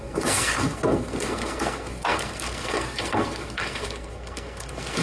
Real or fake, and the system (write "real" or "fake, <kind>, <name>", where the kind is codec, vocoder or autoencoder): fake, codec, SNAC